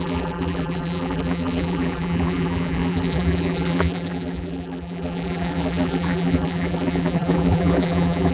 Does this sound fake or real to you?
fake